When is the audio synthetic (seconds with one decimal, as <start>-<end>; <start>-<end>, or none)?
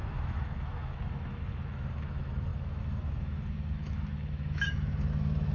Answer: 0.0-5.5